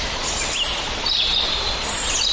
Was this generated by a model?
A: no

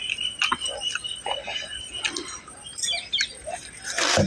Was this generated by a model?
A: no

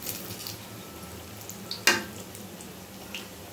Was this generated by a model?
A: no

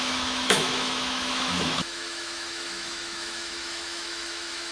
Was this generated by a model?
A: yes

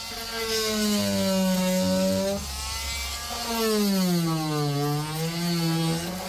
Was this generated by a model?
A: no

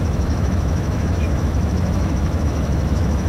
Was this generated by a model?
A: yes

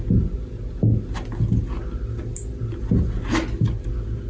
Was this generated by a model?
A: no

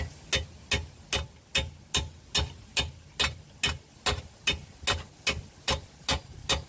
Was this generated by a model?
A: no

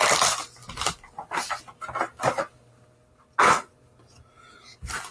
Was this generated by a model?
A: no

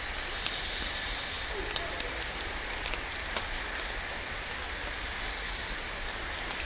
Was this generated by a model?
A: no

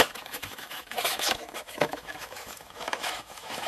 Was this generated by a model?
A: yes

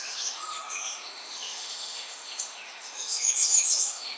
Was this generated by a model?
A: yes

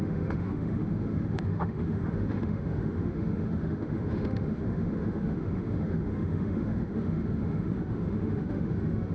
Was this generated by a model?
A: yes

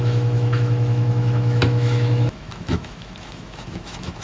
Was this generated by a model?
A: yes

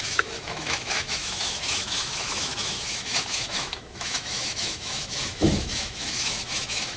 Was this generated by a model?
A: yes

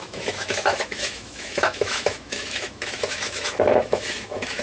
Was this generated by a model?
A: yes